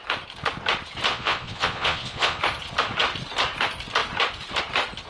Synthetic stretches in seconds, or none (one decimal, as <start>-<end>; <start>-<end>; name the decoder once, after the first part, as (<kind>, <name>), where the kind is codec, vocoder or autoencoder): 1.1-2.4 (vocoder, Vocos)